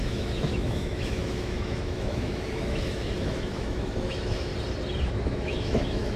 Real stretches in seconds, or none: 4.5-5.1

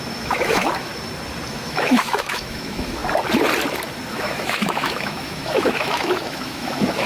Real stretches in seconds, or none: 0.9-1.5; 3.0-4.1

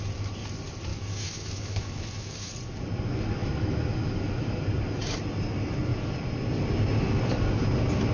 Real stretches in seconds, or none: 0.0-0.9; 2.5-3.4; 4.6-8.1